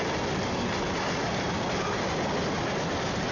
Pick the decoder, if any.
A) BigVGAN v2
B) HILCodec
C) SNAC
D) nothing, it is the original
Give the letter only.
D